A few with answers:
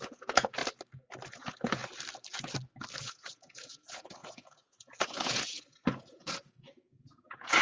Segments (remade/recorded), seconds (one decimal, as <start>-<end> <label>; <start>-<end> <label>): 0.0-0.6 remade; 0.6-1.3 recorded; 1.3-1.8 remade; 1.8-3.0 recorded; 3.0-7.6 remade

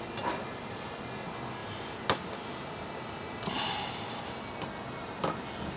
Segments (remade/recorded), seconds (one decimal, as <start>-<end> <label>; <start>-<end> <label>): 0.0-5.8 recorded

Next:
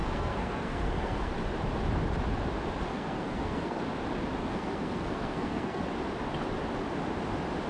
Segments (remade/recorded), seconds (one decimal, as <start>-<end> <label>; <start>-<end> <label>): 0.0-1.3 remade; 1.3-2.9 recorded; 2.9-3.8 remade; 3.8-4.4 recorded; 4.4-5.8 remade; 5.8-7.7 recorded

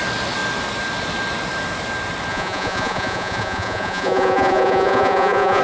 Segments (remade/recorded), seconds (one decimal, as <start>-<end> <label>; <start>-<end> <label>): 0.0-2.3 recorded; 2.3-5.6 remade

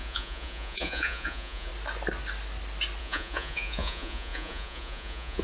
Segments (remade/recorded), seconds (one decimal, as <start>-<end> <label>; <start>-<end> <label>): 0.0-1.7 remade; 1.7-3.0 recorded; 3.0-5.4 remade

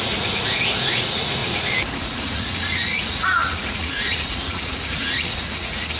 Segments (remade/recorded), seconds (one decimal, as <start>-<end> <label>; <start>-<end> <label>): 0.0-1.4 remade; 1.4-2.0 recorded; 2.0-6.0 remade

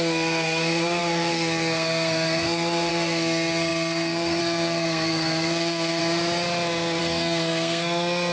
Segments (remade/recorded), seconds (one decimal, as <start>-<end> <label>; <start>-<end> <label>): 0.0-6.0 remade; 6.0-7.0 recorded; 7.0-8.3 remade